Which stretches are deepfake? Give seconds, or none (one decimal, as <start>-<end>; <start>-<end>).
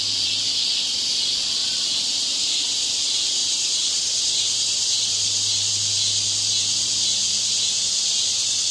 1.6-2.6; 3.4-5.7; 7.2-7.8